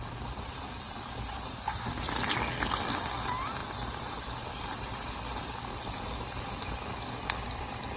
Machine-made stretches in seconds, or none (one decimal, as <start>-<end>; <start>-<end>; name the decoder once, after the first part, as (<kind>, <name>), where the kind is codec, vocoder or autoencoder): 0.0-3.6 (vocoder, BigVGAN v2); 7.5-8.0